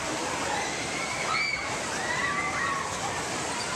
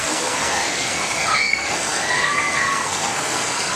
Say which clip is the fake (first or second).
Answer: second